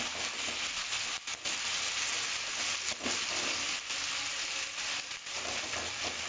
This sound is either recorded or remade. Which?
recorded